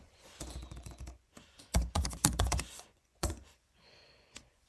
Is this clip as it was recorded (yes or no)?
no